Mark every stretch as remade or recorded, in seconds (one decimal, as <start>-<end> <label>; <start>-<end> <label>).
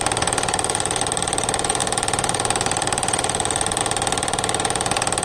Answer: 0.0-5.2 recorded